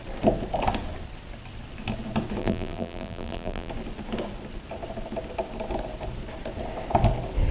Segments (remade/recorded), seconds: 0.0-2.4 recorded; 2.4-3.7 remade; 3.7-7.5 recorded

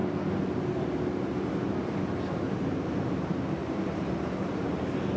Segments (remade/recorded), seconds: 0.0-3.1 recorded; 3.1-5.2 remade

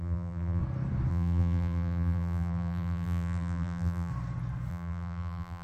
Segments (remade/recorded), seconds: 0.0-0.6 remade; 0.6-1.1 recorded; 1.1-4.1 remade; 4.1-4.7 recorded; 4.7-5.6 remade

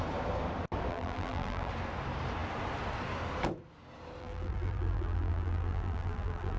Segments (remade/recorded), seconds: 0.0-0.9 recorded; 0.9-1.7 remade; 1.7-4.2 recorded; 4.2-6.6 remade

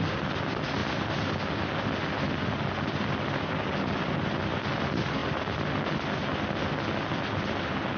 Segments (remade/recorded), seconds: 0.0-8.0 recorded

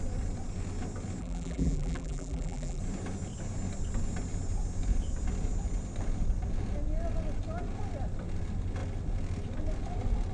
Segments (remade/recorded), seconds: 0.0-1.2 recorded; 1.2-2.8 remade; 2.8-10.3 recorded

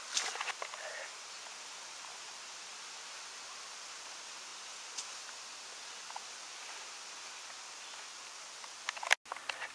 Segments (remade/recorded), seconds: 0.0-9.7 recorded